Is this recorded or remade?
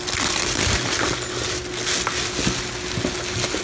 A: recorded